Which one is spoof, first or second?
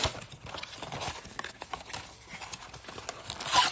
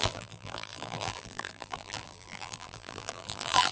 second